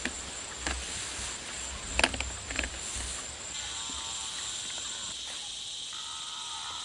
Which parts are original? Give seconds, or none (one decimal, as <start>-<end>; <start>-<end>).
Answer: 0.0-6.8